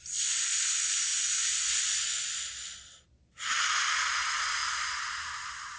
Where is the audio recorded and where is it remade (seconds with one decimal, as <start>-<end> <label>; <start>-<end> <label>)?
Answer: 0.0-5.8 recorded